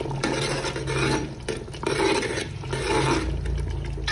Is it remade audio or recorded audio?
recorded